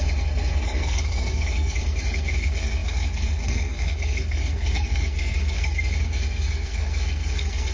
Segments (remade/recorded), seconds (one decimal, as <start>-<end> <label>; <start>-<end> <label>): 0.0-7.7 remade